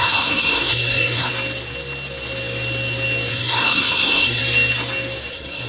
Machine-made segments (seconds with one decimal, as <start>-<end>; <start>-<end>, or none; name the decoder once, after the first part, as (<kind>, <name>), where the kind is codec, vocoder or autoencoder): 0.0-1.3 (codec, SNAC); 3.3-4.4; 5.3-5.7